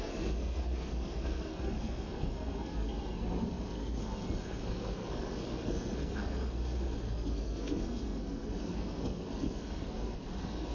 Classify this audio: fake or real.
fake